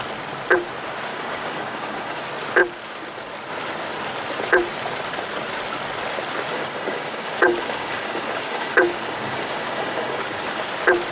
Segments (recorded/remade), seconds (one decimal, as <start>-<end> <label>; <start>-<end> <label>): 0.0-1.1 recorded; 1.1-2.2 remade; 2.2-6.5 recorded; 6.5-10.6 remade; 10.6-11.1 recorded